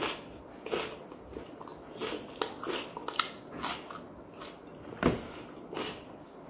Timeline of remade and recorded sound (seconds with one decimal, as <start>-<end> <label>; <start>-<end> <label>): 0.0-6.5 recorded